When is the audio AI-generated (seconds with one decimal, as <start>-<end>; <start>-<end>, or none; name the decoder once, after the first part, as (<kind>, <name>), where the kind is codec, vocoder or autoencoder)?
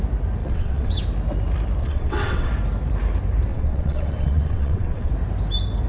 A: 0.4-1.0 (vocoder, WaveNeXt); 1.8-2.5; 3.5-5.1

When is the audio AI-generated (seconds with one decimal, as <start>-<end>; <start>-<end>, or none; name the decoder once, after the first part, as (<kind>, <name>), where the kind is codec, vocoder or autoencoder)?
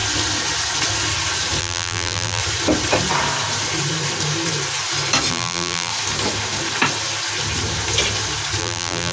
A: 1.6-2.4 (vocoder, BigVGAN v2); 5.3-5.9; 8.6-9.1